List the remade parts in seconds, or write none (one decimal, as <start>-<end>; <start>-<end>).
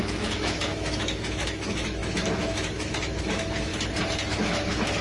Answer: 0.0-3.7; 4.3-5.0